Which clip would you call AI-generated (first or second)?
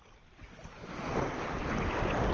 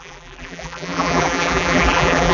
second